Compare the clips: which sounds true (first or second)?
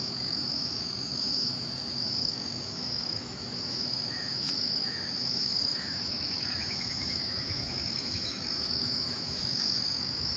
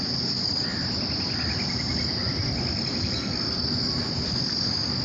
second